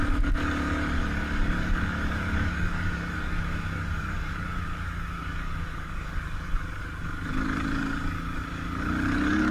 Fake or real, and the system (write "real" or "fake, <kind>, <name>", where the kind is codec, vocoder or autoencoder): fake, codec, DAC